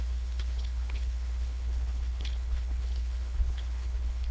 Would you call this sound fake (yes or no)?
yes